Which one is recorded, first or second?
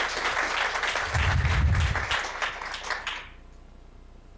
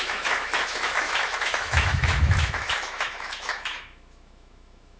first